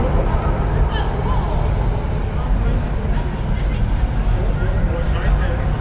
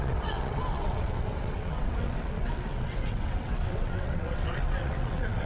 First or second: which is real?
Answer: first